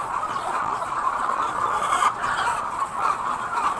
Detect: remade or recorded remade